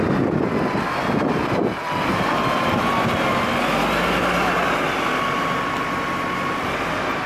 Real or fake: real